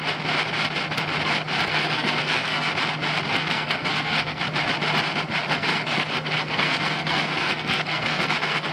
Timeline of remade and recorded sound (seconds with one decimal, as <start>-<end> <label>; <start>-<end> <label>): 0.0-1.7 recorded; 1.7-2.7 remade; 2.7-3.3 recorded; 3.3-4.4 remade; 4.4-5.5 recorded; 5.5-8.7 remade